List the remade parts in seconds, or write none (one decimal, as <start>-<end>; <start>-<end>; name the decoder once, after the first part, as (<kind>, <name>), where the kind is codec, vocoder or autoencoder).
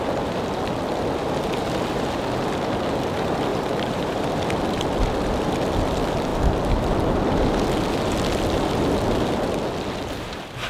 3.5-4.2 (vocoder, BigVGAN v2)